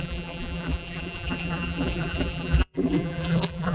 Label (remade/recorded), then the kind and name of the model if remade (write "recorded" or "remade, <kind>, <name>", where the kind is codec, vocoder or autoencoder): remade, vocoder, BigVGAN v2